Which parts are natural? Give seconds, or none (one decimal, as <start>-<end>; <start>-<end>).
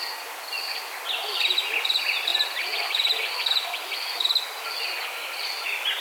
0.0-6.0